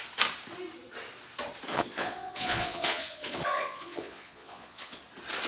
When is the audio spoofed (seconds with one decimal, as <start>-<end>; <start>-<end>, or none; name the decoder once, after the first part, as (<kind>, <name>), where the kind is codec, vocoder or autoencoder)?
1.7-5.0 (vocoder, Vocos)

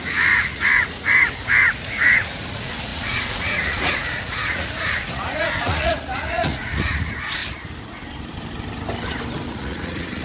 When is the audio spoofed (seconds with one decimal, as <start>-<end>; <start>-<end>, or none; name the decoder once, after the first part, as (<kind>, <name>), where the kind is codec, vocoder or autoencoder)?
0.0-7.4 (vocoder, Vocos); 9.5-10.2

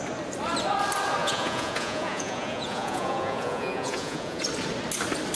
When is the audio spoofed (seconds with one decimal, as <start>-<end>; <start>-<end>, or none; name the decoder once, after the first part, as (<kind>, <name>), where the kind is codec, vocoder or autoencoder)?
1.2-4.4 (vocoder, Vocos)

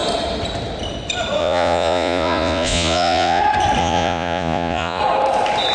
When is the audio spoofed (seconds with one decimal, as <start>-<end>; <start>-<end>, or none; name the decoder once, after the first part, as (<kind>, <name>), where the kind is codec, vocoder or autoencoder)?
1.4-3.4 (vocoder, Vocos); 3.8-5.0